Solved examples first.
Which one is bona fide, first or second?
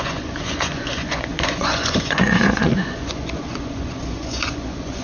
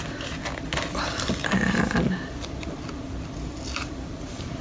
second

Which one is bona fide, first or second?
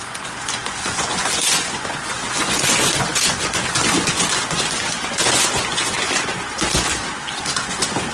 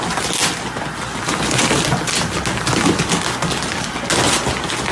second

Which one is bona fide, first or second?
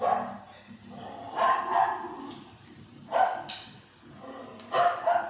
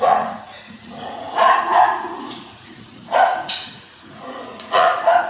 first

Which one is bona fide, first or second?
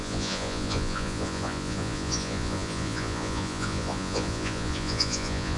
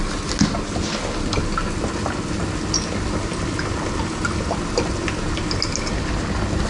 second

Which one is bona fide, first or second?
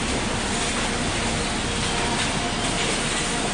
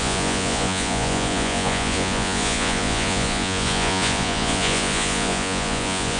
first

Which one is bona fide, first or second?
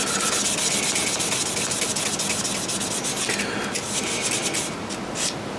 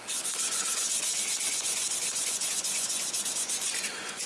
first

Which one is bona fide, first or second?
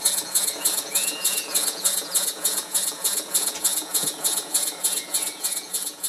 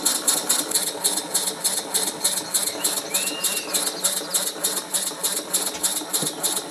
second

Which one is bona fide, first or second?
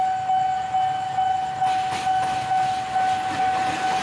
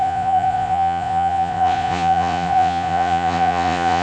first